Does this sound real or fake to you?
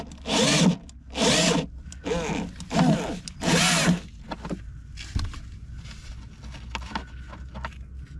real